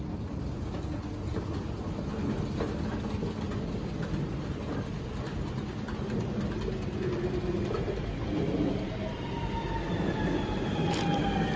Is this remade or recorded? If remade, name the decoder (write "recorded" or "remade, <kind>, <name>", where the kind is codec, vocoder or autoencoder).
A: recorded